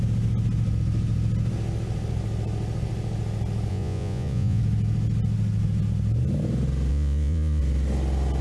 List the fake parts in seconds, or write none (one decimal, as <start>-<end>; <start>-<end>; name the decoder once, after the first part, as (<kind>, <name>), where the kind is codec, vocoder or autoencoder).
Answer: 3.7-4.6 (vocoder, Vocos); 6.9-7.6